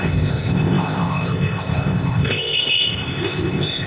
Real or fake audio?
fake